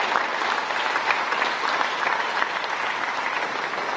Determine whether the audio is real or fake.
real